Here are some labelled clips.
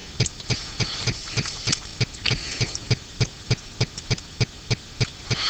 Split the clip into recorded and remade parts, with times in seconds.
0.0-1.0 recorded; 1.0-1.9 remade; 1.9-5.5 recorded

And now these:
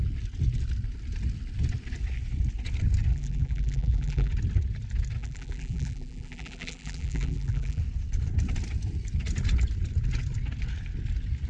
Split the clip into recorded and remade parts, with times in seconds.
0.0-3.1 recorded; 3.1-4.3 remade; 4.3-5.2 recorded; 5.2-7.8 remade; 7.8-11.5 recorded

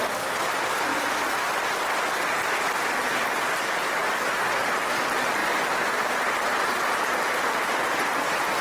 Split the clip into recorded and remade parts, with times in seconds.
0.0-8.6 recorded

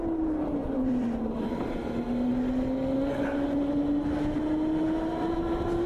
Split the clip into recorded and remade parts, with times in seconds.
0.0-0.6 recorded; 0.6-1.6 remade; 1.6-5.9 recorded